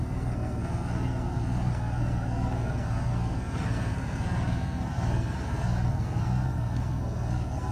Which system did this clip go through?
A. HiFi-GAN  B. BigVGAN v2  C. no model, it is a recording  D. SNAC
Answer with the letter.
D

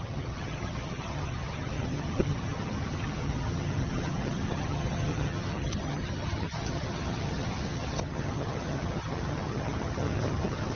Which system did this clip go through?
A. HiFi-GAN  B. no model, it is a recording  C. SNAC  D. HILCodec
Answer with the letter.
A